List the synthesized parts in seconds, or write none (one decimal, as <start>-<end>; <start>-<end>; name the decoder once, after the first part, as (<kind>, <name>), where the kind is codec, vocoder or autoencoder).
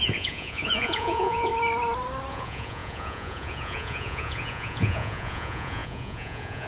0.0-1.5 (vocoder, Vocos); 2.3-6.7